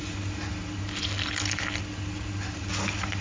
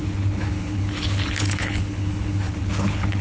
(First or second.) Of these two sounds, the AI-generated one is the second